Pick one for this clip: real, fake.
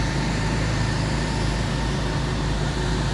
fake